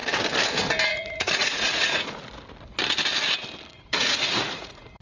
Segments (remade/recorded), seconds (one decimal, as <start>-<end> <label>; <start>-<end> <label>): 0.0-0.9 recorded; 0.9-2.2 remade; 2.2-3.7 recorded; 3.7-5.0 remade